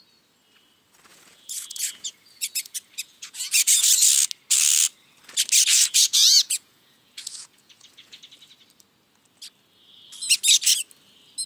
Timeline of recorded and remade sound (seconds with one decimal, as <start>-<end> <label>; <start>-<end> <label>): 0.0-1.1 recorded; 1.1-3.9 remade; 3.9-5.7 recorded; 5.7-8.3 remade; 8.3-11.5 recorded